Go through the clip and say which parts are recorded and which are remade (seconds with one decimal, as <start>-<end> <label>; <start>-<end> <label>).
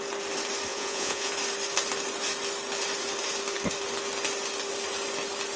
0.0-0.7 recorded; 0.7-1.3 remade; 1.3-5.6 recorded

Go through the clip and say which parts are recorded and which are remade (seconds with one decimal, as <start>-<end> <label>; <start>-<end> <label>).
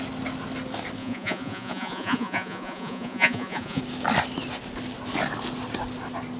0.0-1.0 recorded; 1.0-3.8 remade; 3.8-6.4 recorded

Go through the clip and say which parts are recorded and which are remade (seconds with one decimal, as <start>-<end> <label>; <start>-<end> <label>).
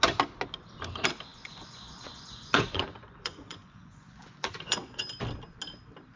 0.0-1.3 recorded; 1.3-5.0 remade; 5.0-6.2 recorded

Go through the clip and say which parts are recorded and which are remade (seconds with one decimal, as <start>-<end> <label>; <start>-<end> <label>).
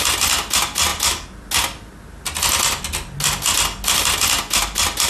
0.0-5.1 recorded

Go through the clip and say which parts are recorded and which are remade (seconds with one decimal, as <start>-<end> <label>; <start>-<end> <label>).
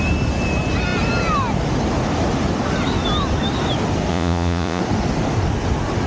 0.0-4.1 recorded; 4.1-4.8 remade; 4.8-6.1 recorded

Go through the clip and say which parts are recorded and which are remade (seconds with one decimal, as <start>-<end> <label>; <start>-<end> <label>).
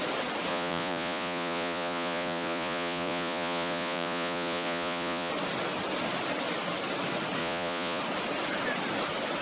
0.0-0.5 recorded; 0.5-5.3 remade; 5.3-7.4 recorded; 7.4-8.0 remade; 8.0-9.4 recorded